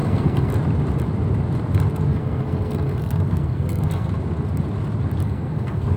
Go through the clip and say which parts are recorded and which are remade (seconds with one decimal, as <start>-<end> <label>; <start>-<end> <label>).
0.0-0.5 remade; 0.5-2.1 recorded; 2.1-4.1 remade; 4.1-5.2 recorded; 5.2-6.0 remade